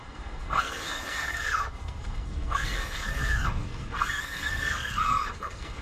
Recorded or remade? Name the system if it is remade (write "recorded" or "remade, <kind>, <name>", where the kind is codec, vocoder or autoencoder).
remade, codec, SNAC